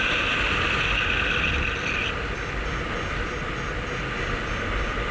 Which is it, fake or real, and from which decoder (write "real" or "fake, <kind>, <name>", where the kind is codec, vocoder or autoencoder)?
real